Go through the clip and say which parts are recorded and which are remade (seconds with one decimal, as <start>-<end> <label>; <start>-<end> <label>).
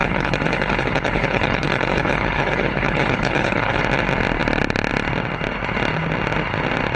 0.0-3.8 remade; 3.8-7.0 recorded